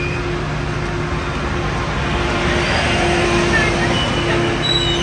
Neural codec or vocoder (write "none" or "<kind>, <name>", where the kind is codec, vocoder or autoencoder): none